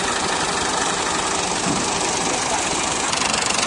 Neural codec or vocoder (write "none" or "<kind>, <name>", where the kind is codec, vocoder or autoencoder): vocoder, BigVGAN v2